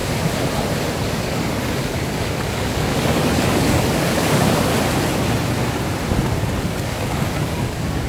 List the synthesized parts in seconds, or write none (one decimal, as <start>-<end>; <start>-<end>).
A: 1.0-4.7; 6.6-8.1